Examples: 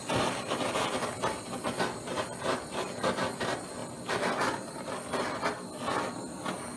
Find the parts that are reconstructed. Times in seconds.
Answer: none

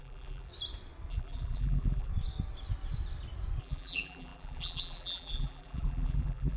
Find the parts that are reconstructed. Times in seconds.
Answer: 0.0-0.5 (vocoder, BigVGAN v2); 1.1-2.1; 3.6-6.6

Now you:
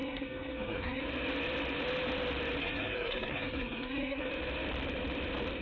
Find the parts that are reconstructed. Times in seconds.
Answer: 0.0-1.0 (codec, SNAC); 2.6-4.3